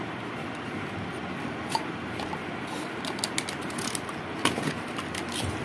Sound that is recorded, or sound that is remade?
recorded